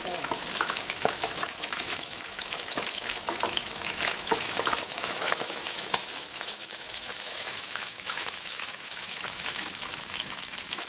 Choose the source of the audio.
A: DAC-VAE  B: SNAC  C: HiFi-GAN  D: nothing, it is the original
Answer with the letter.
A